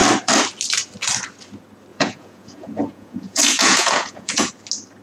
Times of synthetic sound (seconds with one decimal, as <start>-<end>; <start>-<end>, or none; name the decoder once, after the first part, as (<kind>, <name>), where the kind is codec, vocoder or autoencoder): 1.9-4.5 (vocoder, Vocos)